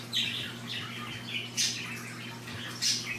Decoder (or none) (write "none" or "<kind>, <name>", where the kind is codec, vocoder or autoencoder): none